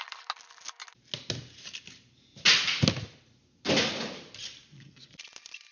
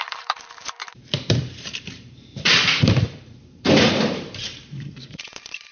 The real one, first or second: first